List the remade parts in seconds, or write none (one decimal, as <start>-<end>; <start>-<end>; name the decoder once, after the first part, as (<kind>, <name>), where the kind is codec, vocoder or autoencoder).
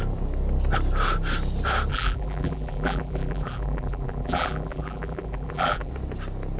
1.9-5.9 (vocoder, BigVGAN v2)